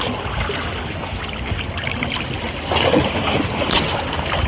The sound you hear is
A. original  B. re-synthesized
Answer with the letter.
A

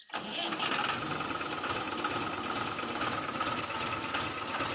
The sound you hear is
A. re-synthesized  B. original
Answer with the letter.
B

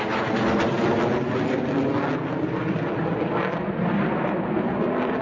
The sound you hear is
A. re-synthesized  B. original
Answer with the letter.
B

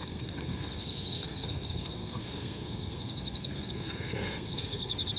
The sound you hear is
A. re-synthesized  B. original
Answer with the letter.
A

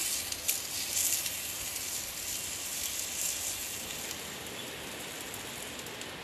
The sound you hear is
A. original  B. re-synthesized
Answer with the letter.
A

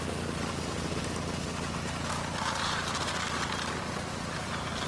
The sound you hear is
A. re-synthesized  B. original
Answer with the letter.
B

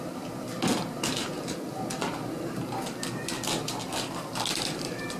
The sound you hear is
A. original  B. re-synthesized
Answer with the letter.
A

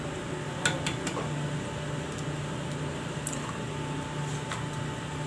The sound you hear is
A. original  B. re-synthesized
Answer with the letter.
A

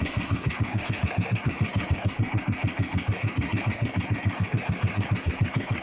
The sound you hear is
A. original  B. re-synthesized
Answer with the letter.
B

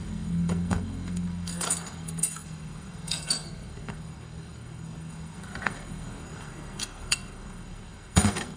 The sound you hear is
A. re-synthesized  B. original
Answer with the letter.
A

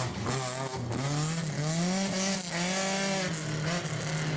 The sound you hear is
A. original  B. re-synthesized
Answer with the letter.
A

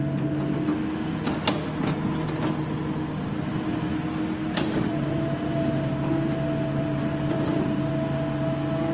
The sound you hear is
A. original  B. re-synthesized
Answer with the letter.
A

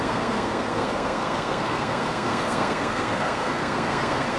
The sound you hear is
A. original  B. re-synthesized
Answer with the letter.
B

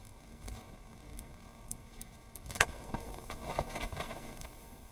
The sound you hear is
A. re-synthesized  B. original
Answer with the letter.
A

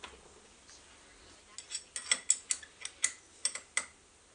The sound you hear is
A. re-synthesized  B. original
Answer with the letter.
B